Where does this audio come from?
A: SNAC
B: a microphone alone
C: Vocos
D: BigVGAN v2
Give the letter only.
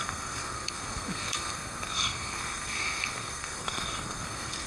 A